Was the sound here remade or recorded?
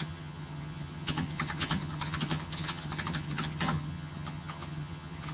remade